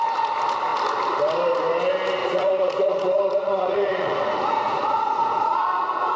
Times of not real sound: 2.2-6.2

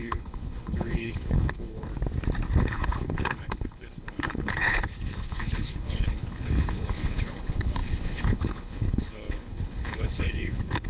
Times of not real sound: 0.0-1.9; 2.6-10.9

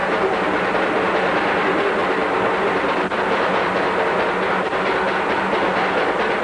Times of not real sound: 0.7-6.4

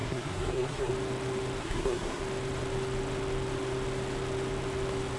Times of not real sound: 0.0-0.9; 1.6-2.2

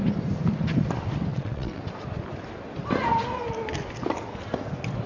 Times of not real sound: 1.3-1.8